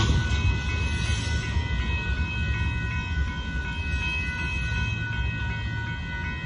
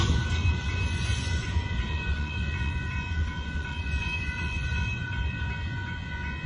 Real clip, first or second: first